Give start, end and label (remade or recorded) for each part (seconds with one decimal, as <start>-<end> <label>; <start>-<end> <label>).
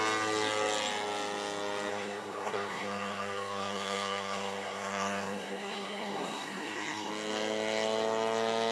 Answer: 0.0-1.9 recorded; 1.9-7.1 remade; 7.1-8.7 recorded